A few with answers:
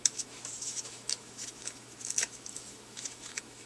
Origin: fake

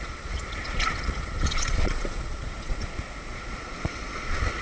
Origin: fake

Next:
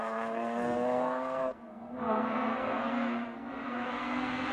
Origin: fake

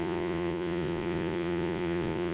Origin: fake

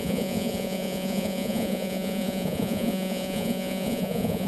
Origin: fake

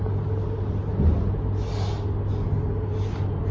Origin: real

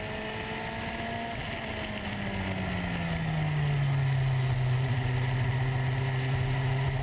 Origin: real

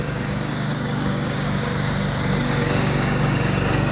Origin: fake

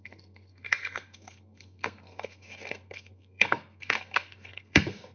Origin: fake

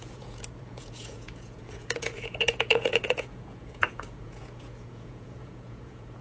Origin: fake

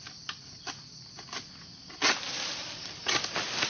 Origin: real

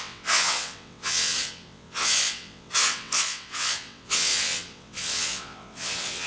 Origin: fake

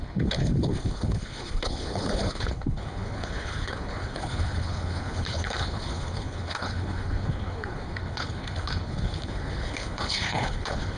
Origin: fake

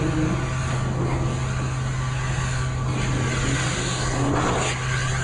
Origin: real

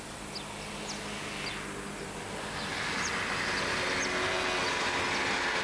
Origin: real